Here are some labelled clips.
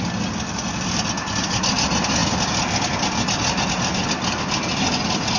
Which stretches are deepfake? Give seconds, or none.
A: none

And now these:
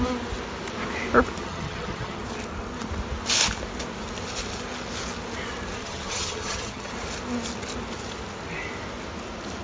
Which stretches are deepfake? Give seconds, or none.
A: 1.4-2.2 (vocoder, HiFi-GAN); 5.8-6.9